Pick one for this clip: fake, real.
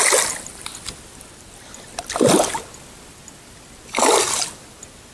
real